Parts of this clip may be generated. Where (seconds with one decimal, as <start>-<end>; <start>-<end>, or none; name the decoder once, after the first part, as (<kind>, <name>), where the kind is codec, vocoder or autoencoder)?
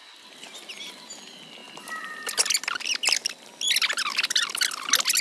none